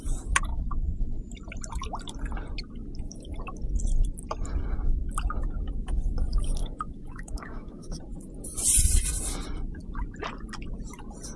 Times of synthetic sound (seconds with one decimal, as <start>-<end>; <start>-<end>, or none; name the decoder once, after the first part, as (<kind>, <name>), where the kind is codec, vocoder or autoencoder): 6.6-8.0 (autoencoder, DAC-VAE)